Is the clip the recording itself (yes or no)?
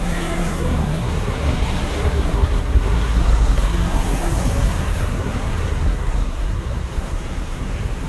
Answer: no